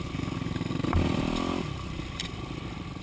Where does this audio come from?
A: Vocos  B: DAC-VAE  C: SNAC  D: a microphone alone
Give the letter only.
D